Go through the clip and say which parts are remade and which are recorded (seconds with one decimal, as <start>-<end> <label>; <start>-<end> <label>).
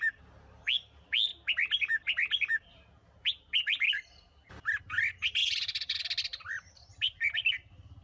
0.0-5.4 recorded; 5.4-6.0 remade; 6.0-8.0 recorded